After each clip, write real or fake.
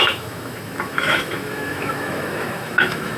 fake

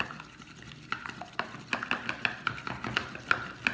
real